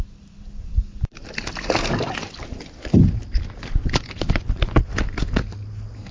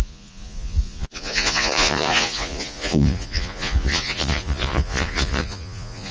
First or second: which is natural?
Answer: first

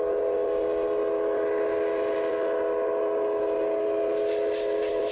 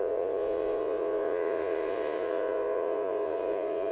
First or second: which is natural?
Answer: first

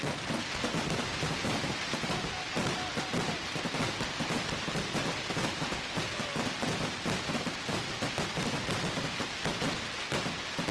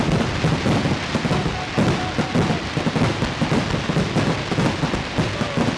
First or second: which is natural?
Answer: second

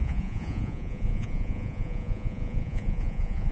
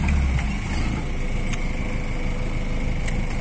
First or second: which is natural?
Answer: second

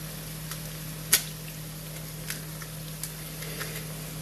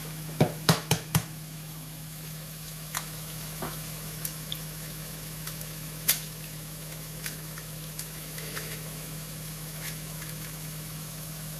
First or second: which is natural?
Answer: first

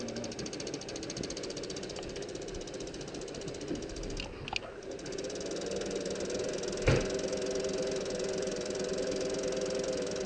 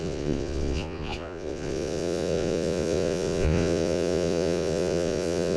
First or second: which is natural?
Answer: first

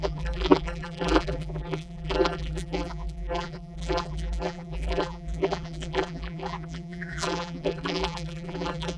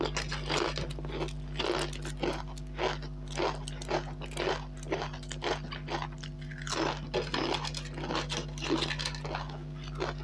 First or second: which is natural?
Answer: second